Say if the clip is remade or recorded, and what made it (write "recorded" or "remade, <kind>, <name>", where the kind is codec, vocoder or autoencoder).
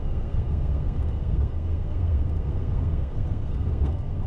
remade, codec, SNAC